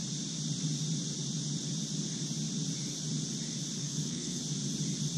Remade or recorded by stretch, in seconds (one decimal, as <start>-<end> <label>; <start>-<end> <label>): 0.0-3.8 recorded; 3.8-4.4 remade; 4.4-5.2 recorded